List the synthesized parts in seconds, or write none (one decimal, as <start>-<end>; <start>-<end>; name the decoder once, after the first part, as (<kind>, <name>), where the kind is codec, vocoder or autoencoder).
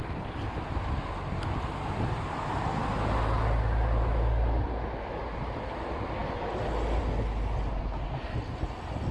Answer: none